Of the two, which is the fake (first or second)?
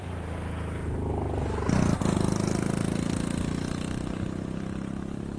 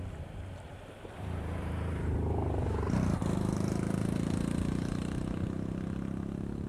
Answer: second